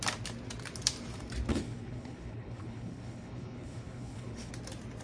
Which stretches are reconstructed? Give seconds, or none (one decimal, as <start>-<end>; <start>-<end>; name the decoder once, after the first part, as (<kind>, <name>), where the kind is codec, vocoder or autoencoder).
1.5-4.5 (codec, HILCodec)